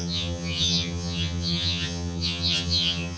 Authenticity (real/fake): fake